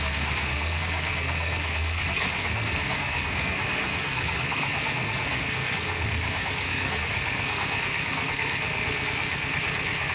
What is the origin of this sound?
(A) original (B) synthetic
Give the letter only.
B